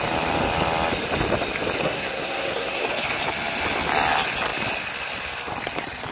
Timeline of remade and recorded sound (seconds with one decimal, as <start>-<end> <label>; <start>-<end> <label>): 0.0-1.8 recorded; 1.8-2.8 remade; 2.8-6.1 recorded